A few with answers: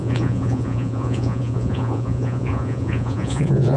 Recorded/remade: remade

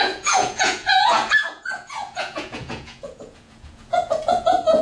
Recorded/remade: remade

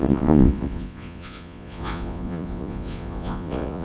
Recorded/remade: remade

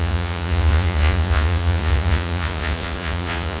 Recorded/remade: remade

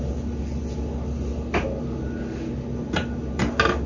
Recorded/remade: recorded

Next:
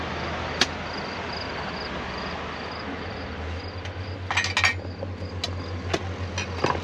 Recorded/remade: recorded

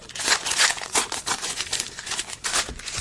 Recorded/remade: remade